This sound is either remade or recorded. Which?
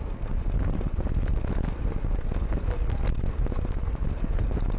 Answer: recorded